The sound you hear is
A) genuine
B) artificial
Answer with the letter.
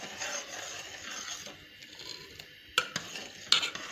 A